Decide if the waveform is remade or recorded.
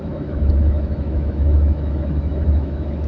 remade